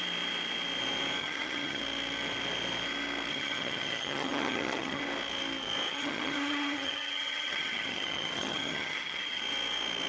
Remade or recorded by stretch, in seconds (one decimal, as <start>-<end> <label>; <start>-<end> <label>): 0.0-1.2 recorded; 1.2-1.8 remade; 1.8-3.3 recorded; 3.3-5.0 remade; 5.0-5.9 recorded; 5.9-9.4 remade; 9.4-10.1 recorded